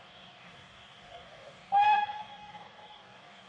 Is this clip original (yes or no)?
no